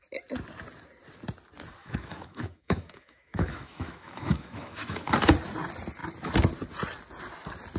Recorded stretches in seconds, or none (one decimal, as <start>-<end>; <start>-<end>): 0.0-1.8; 5.1-7.8